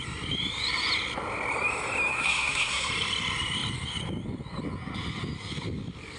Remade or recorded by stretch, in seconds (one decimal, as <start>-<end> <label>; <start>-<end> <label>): 0.0-2.1 recorded; 2.1-2.9 remade; 2.9-6.2 recorded